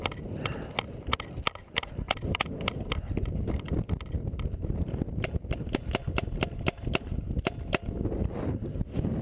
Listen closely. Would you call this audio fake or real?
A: real